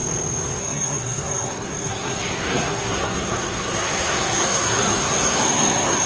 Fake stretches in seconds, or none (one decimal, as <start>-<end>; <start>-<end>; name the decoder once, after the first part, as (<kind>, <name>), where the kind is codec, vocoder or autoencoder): 0.6-6.1 (codec, SNAC)